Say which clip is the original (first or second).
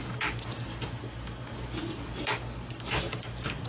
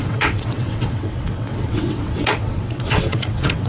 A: first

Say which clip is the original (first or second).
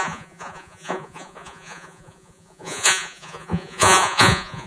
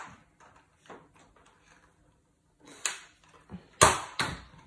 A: second